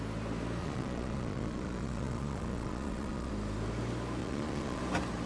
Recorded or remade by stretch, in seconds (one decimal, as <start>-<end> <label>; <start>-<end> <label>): 0.0-0.6 recorded; 0.6-3.3 remade; 3.3-4.2 recorded; 4.2-4.8 remade; 4.8-5.3 recorded